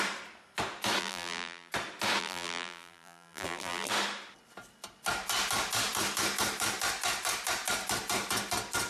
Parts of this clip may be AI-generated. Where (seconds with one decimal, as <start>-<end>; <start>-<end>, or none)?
1.0-1.7; 2.2-3.9